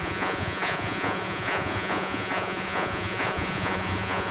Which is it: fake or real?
fake